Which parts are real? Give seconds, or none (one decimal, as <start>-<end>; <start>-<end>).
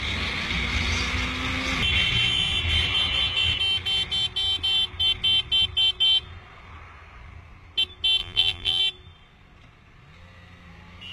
0.0-8.2; 8.8-11.1